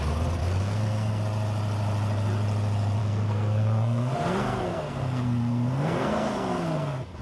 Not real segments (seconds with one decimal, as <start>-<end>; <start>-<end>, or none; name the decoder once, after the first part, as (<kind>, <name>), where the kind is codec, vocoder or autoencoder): 0.4-1.2 (codec, SNAC); 3.0-7.2